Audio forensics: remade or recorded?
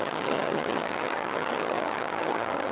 remade